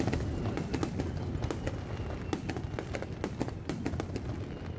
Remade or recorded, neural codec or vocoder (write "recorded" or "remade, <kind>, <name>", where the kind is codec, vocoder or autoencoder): recorded